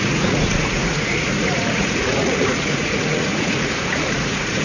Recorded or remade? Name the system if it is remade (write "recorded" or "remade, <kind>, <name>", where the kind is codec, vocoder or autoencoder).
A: remade, vocoder, Vocos